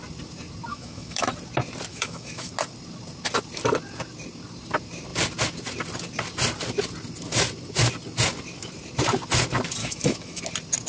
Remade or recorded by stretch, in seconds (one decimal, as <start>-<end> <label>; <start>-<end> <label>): 0.0-0.7 recorded; 0.7-1.3 remade; 1.3-1.9 recorded; 1.9-2.5 remade; 2.5-9.8 recorded; 9.8-10.4 remade; 10.4-10.9 recorded